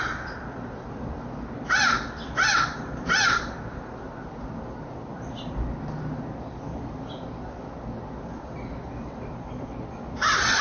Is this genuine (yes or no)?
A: yes